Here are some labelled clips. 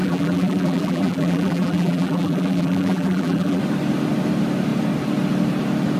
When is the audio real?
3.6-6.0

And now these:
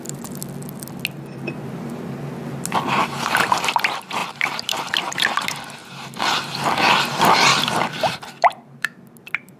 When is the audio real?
0.0-4.2; 4.9-5.8; 6.4-7.5

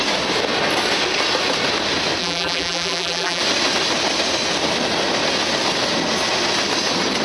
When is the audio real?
0.0-2.2; 3.4-7.2